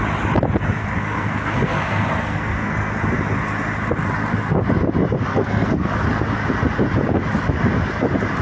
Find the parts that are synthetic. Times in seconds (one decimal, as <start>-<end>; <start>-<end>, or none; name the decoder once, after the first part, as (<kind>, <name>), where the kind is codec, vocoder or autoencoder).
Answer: 0.8-2.9 (codec, SNAC); 5.3-5.9